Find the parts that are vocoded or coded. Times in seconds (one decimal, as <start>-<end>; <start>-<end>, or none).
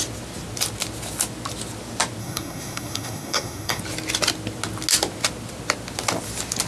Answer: 2.2-3.8